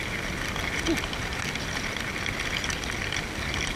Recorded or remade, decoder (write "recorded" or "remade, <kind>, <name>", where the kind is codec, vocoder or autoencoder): recorded